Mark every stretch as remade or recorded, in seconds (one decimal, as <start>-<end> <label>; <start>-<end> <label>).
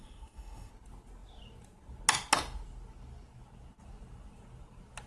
0.0-0.7 remade; 0.7-5.1 recorded